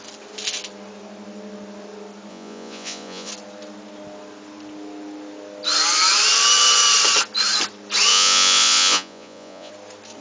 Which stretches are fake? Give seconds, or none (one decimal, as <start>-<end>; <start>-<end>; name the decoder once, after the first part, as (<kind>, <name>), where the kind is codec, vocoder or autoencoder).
2.3-3.3 (vocoder, Vocos); 8.1-9.7